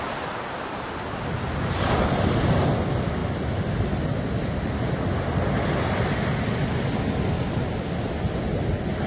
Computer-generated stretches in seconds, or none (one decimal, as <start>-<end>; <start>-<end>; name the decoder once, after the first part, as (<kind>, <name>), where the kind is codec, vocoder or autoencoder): none